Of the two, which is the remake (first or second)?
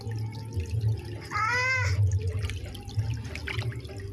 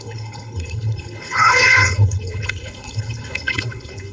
second